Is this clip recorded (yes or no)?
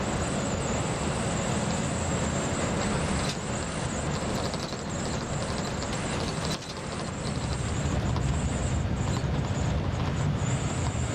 yes